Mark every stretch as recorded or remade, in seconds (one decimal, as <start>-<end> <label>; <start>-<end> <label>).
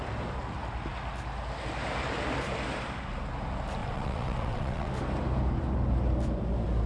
0.0-3.8 recorded; 3.8-4.9 remade; 4.9-6.9 recorded